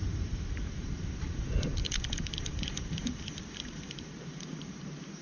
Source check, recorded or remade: remade